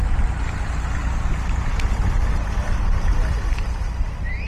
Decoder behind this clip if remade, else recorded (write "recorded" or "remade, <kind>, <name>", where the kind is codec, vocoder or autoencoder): recorded